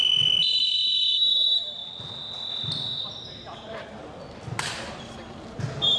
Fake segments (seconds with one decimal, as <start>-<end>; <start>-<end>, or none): 0.0-1.8; 4.9-6.0